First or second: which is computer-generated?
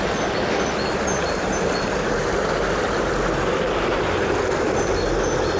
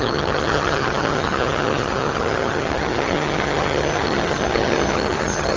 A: second